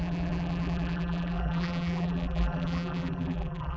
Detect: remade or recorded remade